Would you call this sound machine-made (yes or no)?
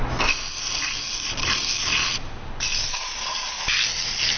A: no